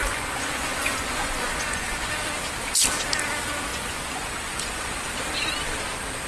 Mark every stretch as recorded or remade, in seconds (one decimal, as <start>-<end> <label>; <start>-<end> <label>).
0.0-2.1 remade; 2.1-3.7 recorded; 3.7-4.9 remade; 4.9-6.3 recorded